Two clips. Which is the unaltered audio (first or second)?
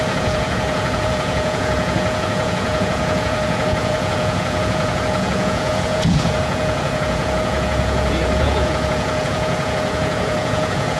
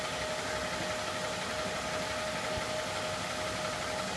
second